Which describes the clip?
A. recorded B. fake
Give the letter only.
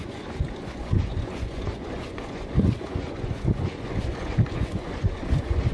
B